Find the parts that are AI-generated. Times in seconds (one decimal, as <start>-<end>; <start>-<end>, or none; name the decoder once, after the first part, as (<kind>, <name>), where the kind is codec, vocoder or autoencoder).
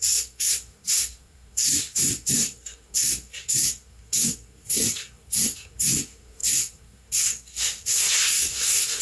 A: 0.0-9.0 (codec, SNAC)